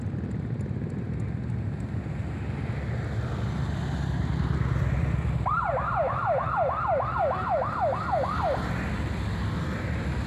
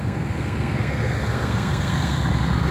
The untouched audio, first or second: first